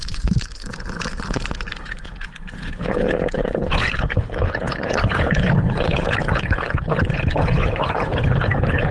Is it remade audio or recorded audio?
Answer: remade